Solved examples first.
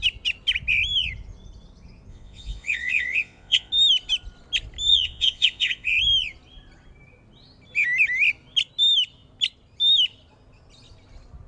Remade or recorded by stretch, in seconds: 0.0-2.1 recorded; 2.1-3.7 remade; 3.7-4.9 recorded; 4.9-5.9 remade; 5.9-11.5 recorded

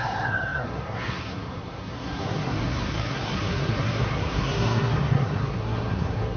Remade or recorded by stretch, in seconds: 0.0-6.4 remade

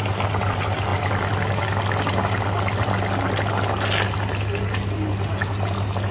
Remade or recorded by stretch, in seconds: 0.0-6.1 recorded

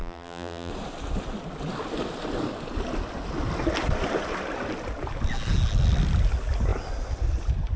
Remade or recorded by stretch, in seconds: 0.0-0.7 remade; 0.7-7.8 recorded

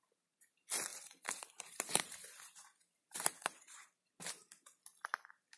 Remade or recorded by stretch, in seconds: 0.0-0.9 recorded; 0.9-4.1 remade; 4.1-5.6 recorded